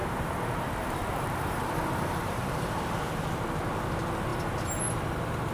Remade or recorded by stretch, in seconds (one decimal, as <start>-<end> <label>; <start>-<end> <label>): 0.0-3.3 remade; 3.3-4.3 recorded; 4.3-4.8 remade; 4.8-5.5 recorded